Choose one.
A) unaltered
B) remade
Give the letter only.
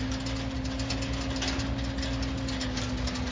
A